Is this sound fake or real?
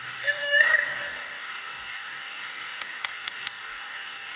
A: fake